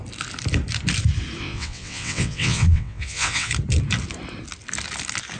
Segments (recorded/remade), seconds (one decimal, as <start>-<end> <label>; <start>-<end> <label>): 0.0-1.4 recorded; 1.4-3.5 remade; 3.5-5.4 recorded